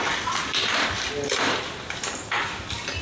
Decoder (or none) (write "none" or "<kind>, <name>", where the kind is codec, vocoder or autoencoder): vocoder, BigVGAN v2